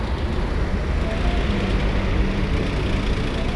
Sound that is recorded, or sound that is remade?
recorded